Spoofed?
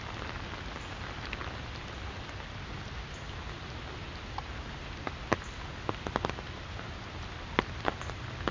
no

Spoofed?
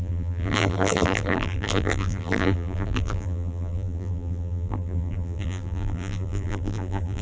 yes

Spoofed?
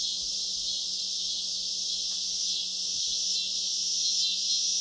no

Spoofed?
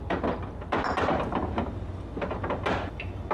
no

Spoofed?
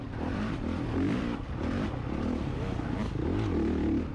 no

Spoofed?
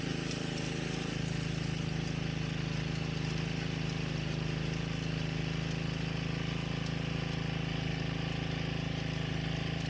no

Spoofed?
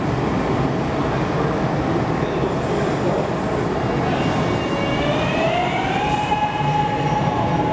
no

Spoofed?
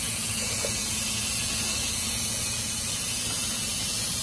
yes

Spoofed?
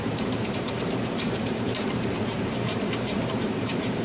yes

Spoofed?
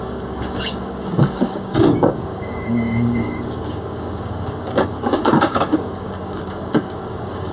yes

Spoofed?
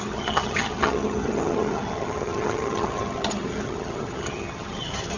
yes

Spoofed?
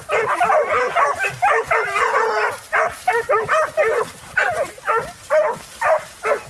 no